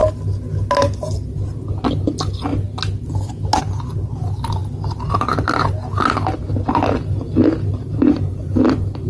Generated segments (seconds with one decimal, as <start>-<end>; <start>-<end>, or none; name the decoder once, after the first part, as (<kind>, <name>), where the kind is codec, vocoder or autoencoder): 7.8-9.1 (vocoder, BigVGAN v2)